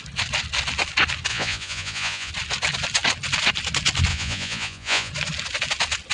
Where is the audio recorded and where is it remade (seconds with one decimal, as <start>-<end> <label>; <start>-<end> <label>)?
0.0-1.3 recorded; 1.3-2.3 remade; 2.3-4.1 recorded; 4.1-5.1 remade; 5.1-6.1 recorded